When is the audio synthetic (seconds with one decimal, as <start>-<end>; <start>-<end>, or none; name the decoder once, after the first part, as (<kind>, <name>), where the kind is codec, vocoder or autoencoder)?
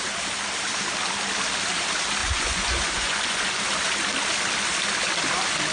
2.2-3.6 (vocoder, Vocos)